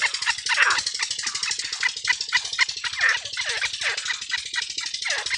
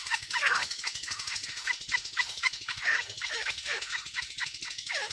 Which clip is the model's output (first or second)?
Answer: second